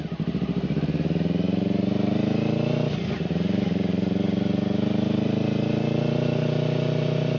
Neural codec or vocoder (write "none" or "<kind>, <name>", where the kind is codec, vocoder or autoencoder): none